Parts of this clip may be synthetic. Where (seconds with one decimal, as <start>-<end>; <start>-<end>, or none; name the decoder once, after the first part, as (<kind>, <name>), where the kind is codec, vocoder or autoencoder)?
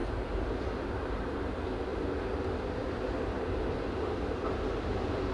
none